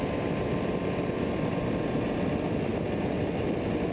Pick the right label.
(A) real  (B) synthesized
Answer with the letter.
A